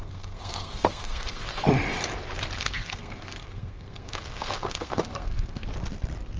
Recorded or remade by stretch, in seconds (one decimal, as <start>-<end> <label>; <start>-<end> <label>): 0.0-1.5 remade; 1.5-2.6 recorded; 2.6-5.7 remade; 5.7-6.4 recorded